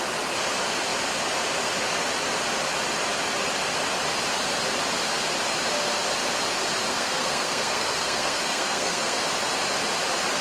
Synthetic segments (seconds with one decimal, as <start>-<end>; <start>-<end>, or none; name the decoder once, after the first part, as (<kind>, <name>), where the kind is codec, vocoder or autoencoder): 6.9-9.2 (codec, SNAC)